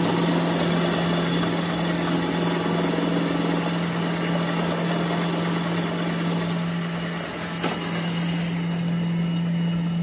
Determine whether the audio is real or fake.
real